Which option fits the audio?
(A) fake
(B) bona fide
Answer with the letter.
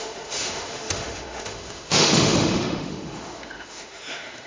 A